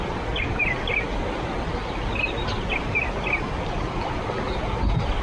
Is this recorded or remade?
recorded